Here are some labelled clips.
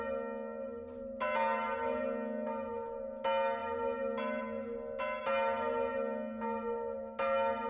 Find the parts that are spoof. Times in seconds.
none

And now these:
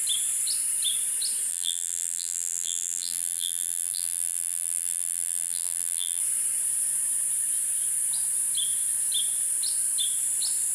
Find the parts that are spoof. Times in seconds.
1.5-6.2 (vocoder, BigVGAN v2)

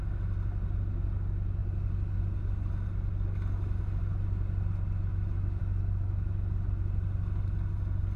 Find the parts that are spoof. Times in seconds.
5.1-5.6 (autoencoder, DAC-VAE)

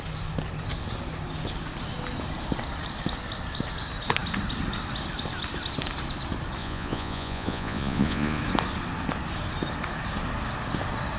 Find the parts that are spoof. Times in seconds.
6.6-8.4 (vocoder, Vocos)

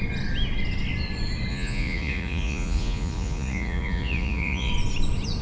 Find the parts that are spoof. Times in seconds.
1.5-4.7 (vocoder, Vocos)